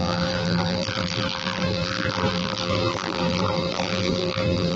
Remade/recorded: remade